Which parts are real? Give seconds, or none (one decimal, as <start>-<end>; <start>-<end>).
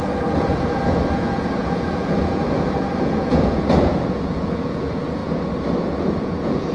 5.2-6.0